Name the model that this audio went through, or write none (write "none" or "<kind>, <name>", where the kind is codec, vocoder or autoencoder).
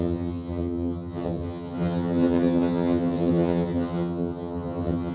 vocoder, HiFi-GAN